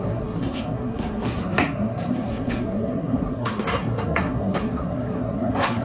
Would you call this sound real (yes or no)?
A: no